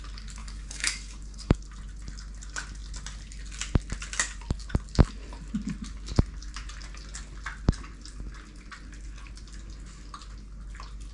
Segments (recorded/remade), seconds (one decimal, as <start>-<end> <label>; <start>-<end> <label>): 0.0-0.4 recorded; 0.4-1.6 remade; 1.6-11.1 recorded